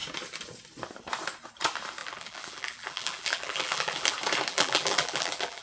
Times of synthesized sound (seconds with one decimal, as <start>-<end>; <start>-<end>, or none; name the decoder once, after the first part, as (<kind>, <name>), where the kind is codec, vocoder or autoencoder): 2.0-4.1 (vocoder, BigVGAN v2); 4.5-5.6